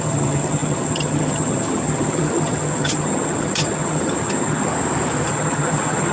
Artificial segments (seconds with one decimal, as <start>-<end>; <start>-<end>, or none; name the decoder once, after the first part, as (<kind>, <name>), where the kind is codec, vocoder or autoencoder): 0.0-4.7 (vocoder, HiFi-GAN); 5.3-6.1